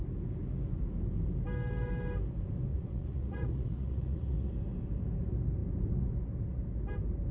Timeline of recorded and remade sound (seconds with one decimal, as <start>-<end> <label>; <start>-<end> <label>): 0.0-2.7 recorded; 2.7-4.5 remade; 4.5-7.3 recorded